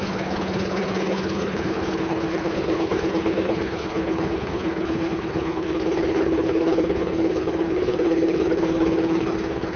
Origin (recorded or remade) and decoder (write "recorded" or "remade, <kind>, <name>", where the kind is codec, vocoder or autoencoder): remade, codec, HILCodec